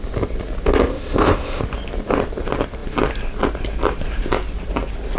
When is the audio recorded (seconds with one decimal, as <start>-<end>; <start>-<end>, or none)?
0.0-0.9; 1.6-5.2